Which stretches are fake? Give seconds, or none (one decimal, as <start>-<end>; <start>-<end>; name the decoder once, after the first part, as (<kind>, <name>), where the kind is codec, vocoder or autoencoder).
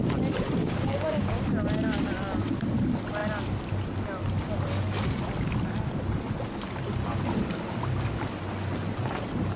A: 0.6-1.4 (codec, DAC)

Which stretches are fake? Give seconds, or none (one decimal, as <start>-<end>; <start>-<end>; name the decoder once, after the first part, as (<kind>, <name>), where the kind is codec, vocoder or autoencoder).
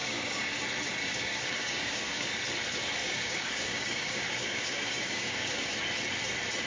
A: 0.0-0.6 (codec, DAC); 1.0-2.4; 3.0-5.7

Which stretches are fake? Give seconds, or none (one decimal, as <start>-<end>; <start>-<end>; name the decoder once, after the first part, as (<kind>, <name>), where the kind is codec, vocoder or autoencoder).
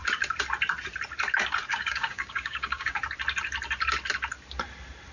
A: 1.7-3.0 (codec, DAC)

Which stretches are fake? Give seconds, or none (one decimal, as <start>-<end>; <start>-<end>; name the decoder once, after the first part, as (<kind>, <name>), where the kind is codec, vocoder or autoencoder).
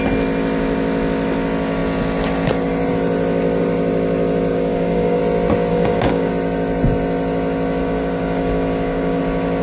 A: 4.5-5.2 (codec, DAC); 5.7-6.3; 7.8-9.2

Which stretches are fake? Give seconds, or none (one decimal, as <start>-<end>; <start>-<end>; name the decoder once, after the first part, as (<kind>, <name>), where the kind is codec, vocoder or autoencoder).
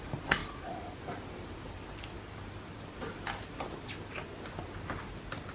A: none